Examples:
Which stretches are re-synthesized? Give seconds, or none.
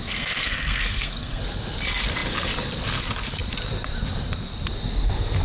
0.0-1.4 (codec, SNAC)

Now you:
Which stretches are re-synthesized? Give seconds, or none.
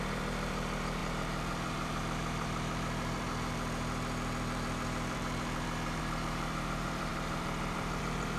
0.0-8.4 (vocoder, BigVGAN v2)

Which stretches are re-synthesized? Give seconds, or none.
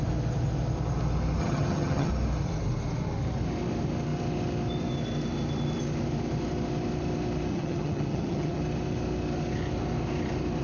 1.4-2.1 (vocoder, HiFi-GAN); 7.5-8.6